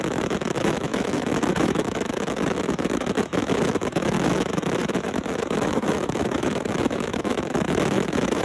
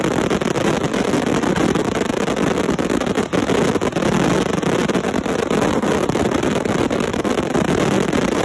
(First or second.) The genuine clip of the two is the second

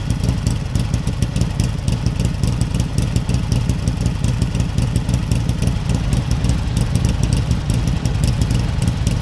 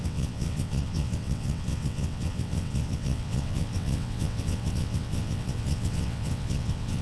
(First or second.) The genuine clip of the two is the first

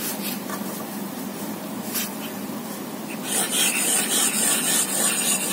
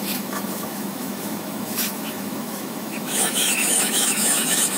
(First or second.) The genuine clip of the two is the first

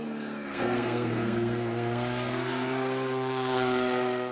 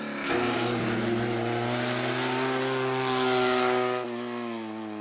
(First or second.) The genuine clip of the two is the second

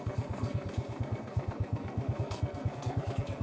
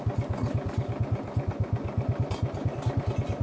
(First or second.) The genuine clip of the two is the second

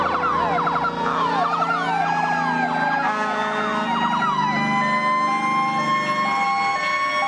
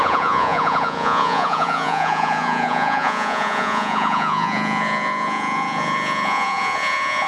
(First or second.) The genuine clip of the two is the first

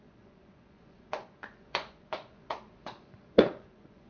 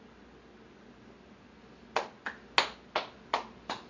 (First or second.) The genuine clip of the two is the second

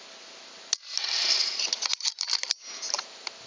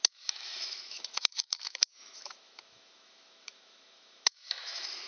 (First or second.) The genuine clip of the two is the first